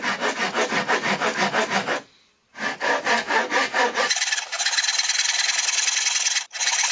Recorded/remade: recorded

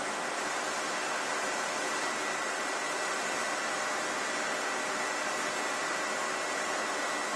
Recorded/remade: recorded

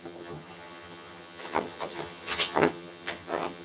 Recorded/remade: remade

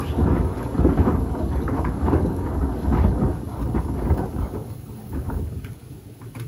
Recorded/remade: remade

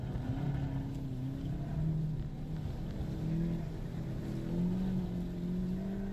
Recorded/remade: recorded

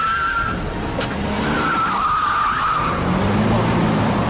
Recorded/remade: recorded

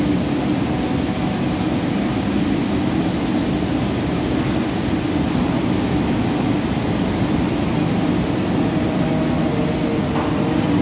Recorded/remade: recorded